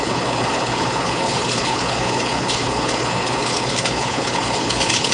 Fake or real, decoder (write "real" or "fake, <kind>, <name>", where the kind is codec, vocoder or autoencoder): fake, codec, HILCodec